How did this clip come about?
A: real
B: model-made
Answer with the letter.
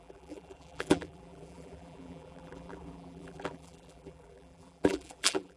B